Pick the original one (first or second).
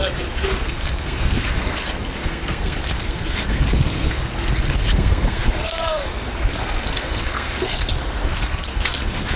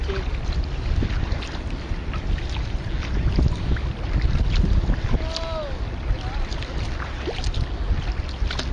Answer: second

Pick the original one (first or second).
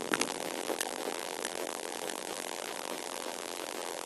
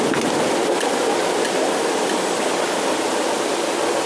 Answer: second